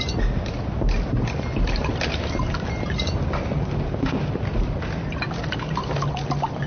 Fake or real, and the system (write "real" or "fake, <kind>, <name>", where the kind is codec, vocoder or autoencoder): real